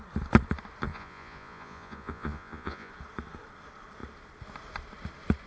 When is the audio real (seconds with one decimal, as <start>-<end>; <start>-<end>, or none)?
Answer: 0.0-0.9; 2.9-5.5

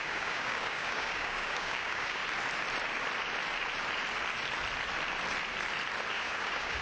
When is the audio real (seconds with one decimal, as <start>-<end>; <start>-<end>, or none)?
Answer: 2.2-6.1

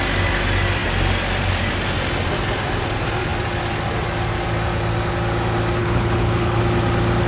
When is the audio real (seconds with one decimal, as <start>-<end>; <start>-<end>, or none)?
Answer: 0.0-5.8; 6.6-7.3

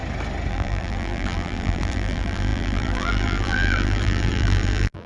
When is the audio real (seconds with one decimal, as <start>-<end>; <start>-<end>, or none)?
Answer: 0.0-0.5

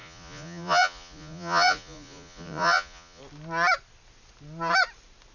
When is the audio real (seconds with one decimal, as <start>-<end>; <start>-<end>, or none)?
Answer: 3.2-5.3